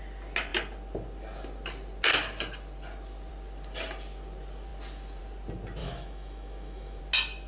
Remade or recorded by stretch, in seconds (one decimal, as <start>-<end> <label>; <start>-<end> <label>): 0.0-5.8 recorded; 5.8-7.0 remade; 7.0-7.5 recorded